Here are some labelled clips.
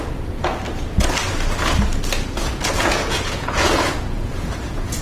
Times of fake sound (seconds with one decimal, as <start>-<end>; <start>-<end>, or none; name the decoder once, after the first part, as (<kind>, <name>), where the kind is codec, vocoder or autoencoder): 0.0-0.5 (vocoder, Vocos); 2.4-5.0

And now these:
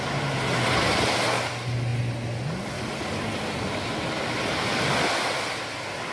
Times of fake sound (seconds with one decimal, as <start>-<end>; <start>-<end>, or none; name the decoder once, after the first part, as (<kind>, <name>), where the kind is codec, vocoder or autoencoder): none

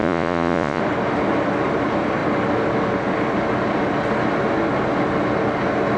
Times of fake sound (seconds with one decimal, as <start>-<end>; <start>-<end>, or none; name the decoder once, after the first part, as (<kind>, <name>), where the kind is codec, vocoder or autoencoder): 0.0-0.8 (vocoder, Vocos)

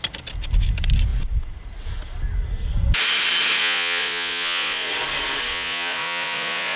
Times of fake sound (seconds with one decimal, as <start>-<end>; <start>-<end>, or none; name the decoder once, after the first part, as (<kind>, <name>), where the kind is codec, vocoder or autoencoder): 3.6-4.9 (vocoder, Vocos); 5.5-6.8